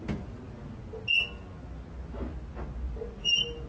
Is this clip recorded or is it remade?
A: recorded